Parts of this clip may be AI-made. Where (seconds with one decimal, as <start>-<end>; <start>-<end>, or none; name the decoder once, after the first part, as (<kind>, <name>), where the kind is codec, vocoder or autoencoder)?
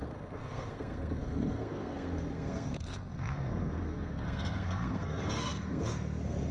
0.0-6.5 (codec, SNAC)